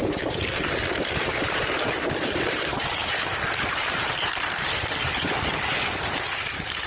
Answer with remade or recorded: remade